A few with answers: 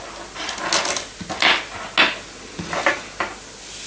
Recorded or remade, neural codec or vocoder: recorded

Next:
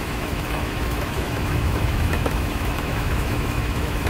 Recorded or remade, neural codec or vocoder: remade, autoencoder, DAC-VAE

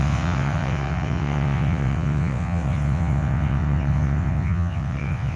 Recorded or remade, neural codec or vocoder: remade, vocoder, WaveNeXt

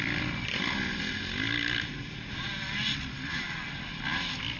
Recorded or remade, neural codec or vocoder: recorded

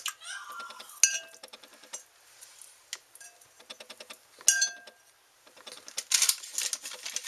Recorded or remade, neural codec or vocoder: recorded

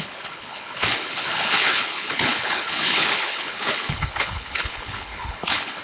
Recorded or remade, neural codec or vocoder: remade, codec, HILCodec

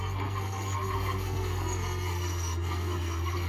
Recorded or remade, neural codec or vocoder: remade, codec, SNAC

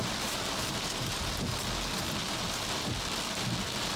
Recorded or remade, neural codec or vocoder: recorded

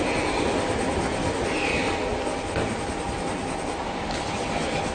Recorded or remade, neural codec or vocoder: recorded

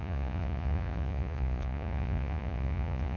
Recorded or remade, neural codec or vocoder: remade, vocoder, Vocos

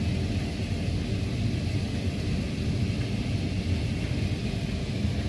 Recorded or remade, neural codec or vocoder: recorded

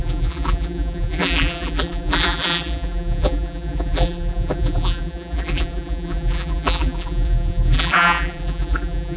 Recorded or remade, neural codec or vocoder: remade, vocoder, BigVGAN v2